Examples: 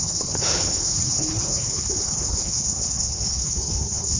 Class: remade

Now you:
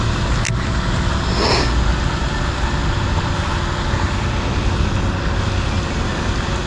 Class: recorded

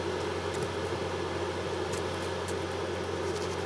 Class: recorded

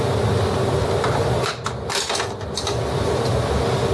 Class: recorded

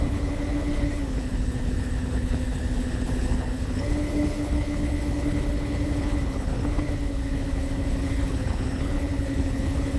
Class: remade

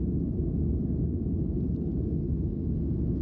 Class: recorded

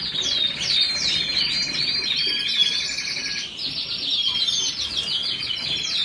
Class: recorded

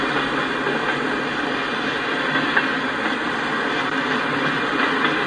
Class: recorded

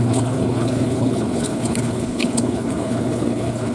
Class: remade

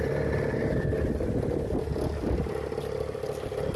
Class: recorded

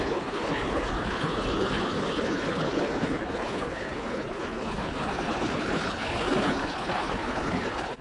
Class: remade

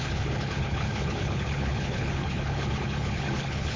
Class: remade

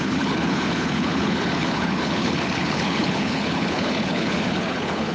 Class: remade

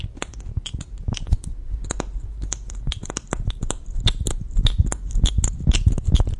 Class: recorded